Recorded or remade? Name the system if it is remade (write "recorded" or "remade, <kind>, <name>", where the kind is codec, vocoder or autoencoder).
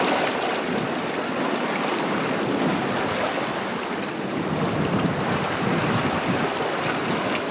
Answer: recorded